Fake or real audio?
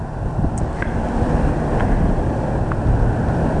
fake